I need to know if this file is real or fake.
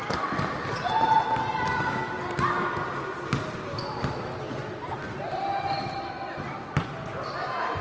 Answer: real